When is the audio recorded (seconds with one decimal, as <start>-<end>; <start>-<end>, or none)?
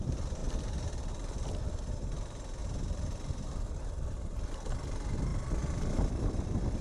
0.0-0.4; 1.1-2.6; 3.7-5.3; 6.1-6.8